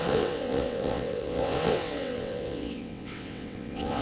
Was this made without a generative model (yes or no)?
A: no